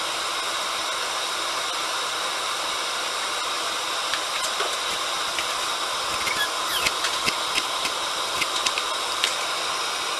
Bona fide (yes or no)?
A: yes